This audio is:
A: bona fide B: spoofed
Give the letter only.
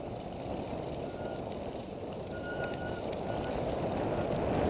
A